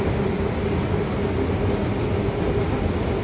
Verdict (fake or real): real